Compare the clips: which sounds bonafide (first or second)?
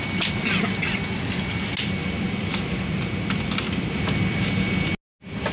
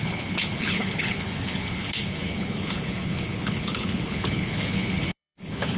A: first